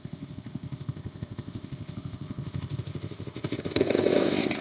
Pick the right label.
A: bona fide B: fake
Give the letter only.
B